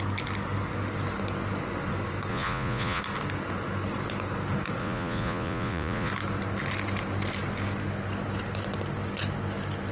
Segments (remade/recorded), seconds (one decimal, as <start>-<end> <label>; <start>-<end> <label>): 0.0-2.3 recorded; 2.3-3.0 remade; 3.0-4.8 recorded; 4.8-6.1 remade; 6.1-9.9 recorded